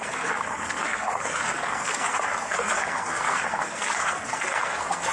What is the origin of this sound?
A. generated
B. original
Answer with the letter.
A